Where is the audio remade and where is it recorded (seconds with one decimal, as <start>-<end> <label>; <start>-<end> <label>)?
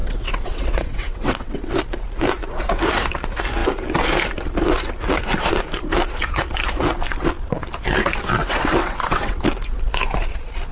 0.0-1.7 remade; 1.7-8.4 recorded; 8.4-9.4 remade; 9.4-10.7 recorded